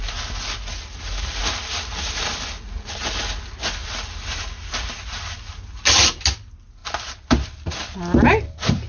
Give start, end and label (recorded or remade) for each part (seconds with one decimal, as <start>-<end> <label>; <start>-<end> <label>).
0.0-8.9 recorded